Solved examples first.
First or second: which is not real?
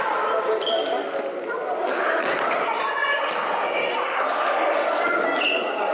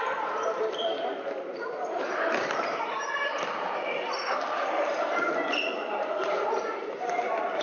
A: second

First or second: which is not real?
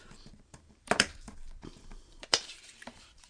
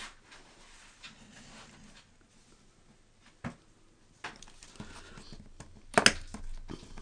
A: first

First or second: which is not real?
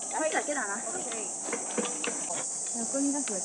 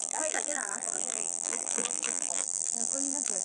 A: second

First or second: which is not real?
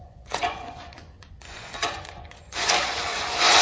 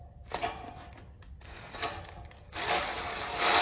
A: first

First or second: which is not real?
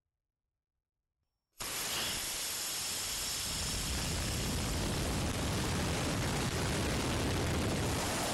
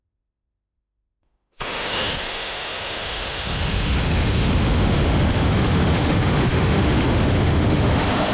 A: second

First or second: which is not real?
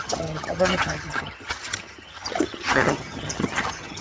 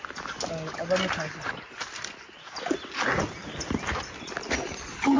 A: first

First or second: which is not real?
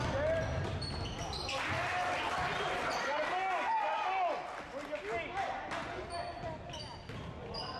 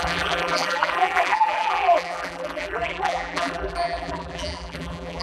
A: second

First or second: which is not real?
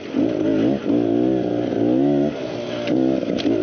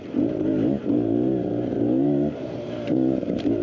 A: second